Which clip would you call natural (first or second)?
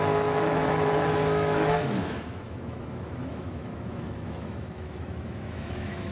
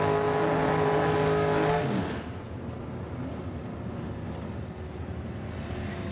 second